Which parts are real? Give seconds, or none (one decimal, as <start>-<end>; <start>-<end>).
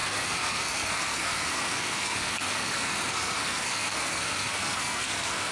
none